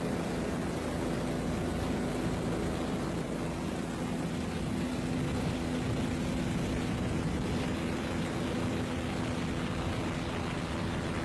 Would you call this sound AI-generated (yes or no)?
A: no